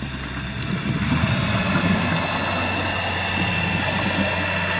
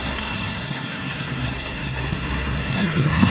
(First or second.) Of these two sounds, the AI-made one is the second